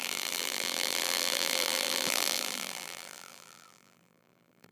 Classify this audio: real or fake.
fake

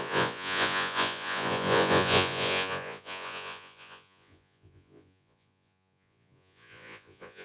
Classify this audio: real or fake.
fake